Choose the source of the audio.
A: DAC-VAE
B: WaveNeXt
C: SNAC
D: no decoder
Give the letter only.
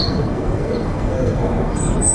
C